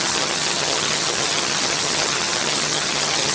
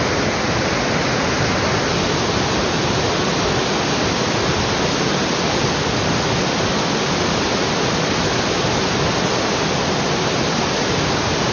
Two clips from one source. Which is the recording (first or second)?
second